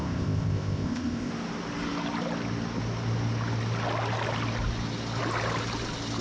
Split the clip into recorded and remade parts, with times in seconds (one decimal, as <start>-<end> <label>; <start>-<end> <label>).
0.0-1.3 remade; 1.3-6.2 recorded